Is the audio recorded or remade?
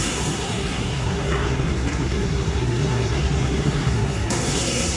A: remade